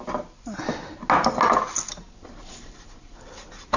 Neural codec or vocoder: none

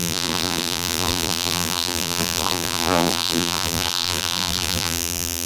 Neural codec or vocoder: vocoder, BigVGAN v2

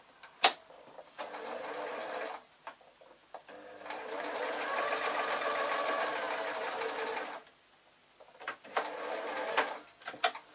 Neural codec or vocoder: none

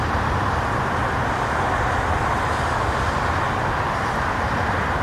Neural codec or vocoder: none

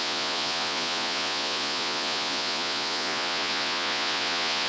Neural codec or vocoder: vocoder, Vocos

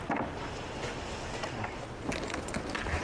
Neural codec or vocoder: none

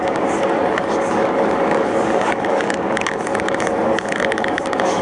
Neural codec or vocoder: codec, DAC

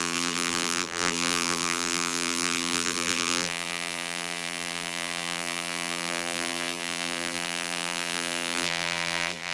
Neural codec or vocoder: vocoder, BigVGAN v2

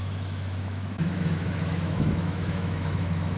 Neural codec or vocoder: autoencoder, DAC-VAE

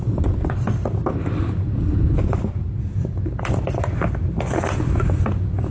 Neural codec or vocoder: none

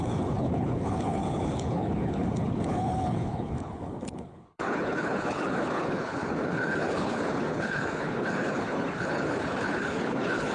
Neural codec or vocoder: codec, HILCodec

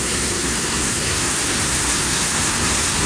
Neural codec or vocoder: codec, SNAC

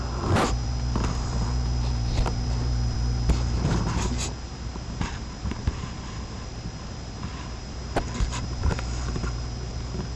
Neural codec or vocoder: vocoder, BigVGAN v2